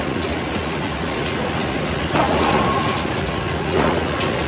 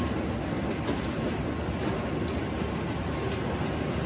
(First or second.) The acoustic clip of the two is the second